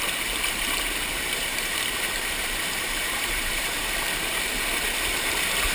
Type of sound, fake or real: fake